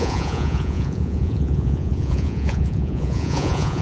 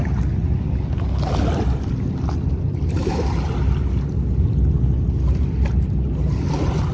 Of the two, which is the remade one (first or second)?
first